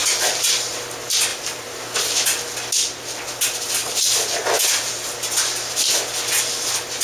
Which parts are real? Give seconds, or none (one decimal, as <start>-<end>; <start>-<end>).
0.8-1.3; 1.8-7.0